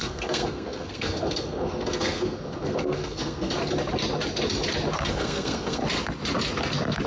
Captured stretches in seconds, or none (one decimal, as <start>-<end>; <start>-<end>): 3.6-5.1; 5.8-7.1